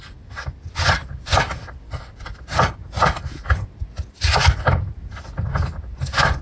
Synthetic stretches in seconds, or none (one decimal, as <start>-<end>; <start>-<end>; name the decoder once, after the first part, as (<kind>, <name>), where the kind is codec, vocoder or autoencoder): 1.6-3.7 (vocoder, BigVGAN v2)